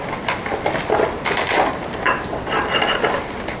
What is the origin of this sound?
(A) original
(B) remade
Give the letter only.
A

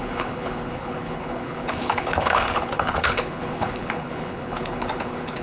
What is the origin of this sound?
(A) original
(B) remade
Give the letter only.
B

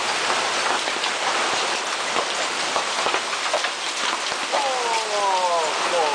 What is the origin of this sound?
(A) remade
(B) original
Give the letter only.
B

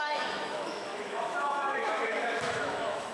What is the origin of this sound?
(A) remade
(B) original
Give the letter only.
A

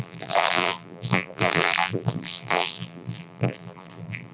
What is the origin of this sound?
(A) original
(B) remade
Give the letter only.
B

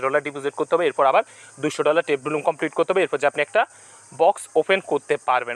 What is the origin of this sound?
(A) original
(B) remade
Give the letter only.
A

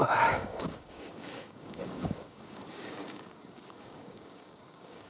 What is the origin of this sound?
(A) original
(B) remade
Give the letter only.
B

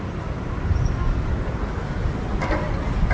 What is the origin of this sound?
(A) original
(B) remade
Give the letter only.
A